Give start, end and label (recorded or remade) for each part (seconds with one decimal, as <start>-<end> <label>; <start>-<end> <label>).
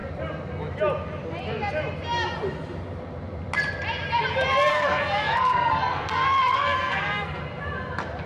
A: 0.0-4.7 recorded; 4.7-7.4 remade; 7.4-8.3 recorded